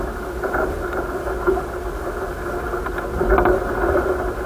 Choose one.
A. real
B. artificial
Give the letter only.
A